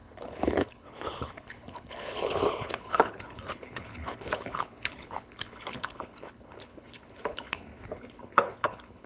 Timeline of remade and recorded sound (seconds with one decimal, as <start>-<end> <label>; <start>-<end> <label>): 0.0-9.1 remade